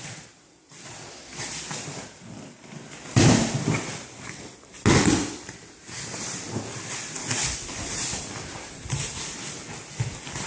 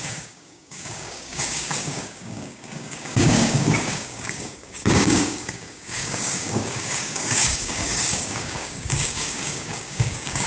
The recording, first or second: first